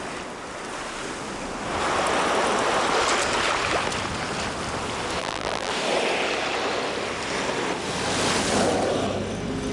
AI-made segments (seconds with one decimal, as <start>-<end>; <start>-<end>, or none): 5.2-5.7